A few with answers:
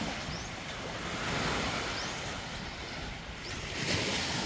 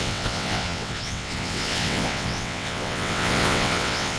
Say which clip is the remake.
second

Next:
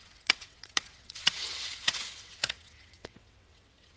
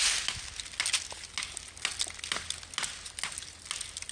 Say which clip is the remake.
first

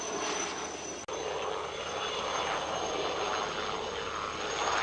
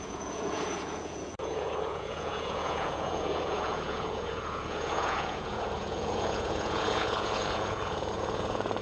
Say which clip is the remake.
second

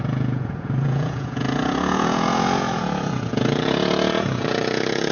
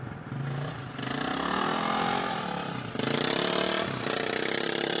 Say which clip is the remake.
first